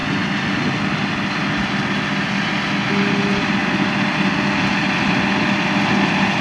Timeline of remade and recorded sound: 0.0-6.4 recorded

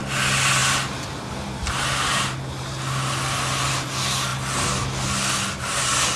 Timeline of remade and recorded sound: 0.0-6.2 recorded

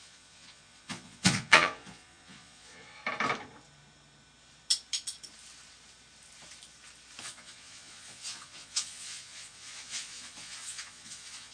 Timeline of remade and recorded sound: 0.0-3.0 remade; 3.0-7.2 recorded; 7.2-11.5 remade

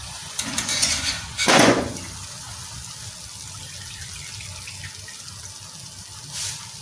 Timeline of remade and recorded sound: 0.0-1.9 remade; 1.9-6.8 recorded

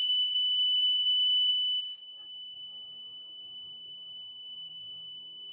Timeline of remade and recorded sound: 0.0-1.5 remade; 1.5-2.0 recorded; 2.0-5.5 remade

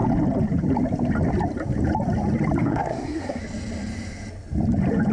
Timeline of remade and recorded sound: 0.0-2.6 recorded; 2.6-3.4 remade; 3.4-5.1 recorded